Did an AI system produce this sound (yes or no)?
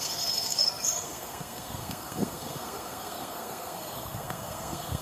yes